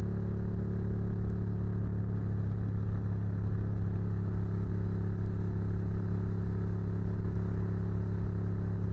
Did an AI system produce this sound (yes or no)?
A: no